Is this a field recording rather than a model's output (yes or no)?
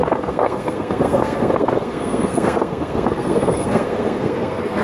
no